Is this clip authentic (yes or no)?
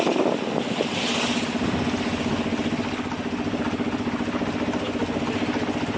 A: yes